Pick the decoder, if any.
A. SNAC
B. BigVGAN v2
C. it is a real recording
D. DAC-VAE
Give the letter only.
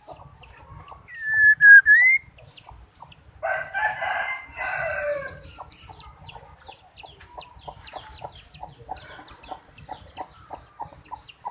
C